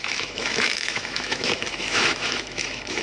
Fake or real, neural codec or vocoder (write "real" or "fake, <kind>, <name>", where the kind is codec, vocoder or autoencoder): fake, autoencoder, DAC-VAE